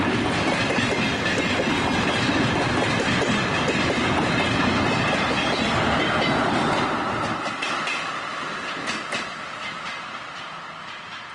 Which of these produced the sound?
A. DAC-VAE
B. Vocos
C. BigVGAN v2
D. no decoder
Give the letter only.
D